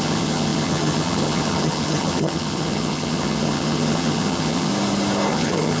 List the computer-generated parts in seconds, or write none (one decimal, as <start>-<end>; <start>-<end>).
0.0-4.7; 5.3-5.8